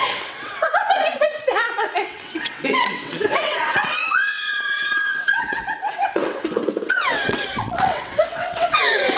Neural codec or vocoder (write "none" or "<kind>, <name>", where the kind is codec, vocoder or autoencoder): vocoder, WaveNeXt